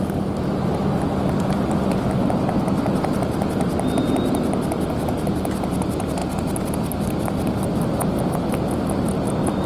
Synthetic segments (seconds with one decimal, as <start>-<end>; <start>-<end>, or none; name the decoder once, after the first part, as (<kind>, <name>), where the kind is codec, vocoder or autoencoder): none